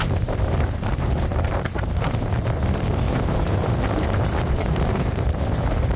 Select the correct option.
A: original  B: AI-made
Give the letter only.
B